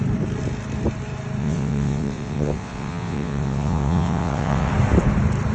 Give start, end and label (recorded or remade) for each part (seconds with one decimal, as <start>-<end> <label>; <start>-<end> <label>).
0.0-1.4 recorded; 1.4-4.7 remade; 4.7-5.5 recorded